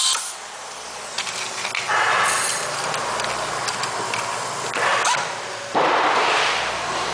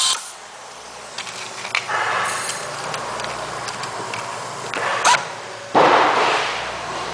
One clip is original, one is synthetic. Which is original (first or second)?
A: first